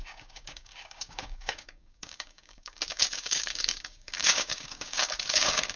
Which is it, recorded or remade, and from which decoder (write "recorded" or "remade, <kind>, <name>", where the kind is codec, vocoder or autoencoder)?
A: remade, codec, DAC